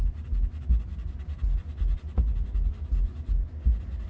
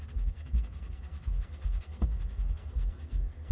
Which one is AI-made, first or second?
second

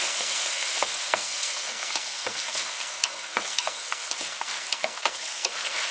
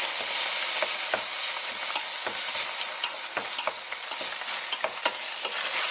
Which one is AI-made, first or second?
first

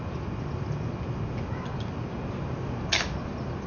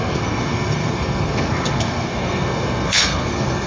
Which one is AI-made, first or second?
second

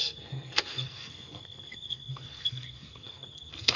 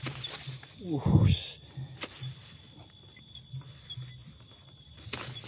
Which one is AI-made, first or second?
first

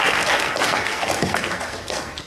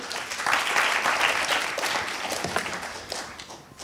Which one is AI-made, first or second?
first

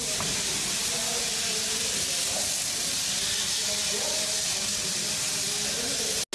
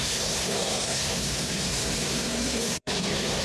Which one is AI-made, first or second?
second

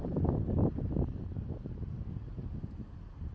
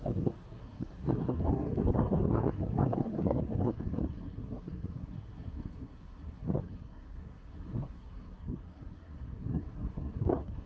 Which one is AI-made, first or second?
second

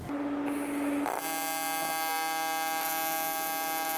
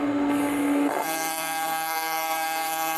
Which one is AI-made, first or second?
second